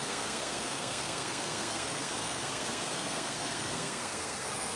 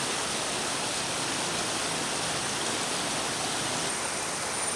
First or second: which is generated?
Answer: first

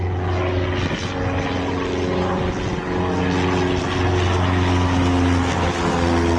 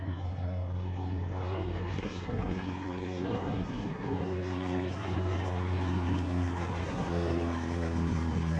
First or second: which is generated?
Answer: second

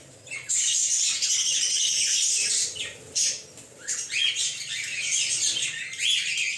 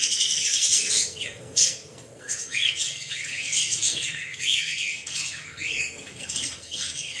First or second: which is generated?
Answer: second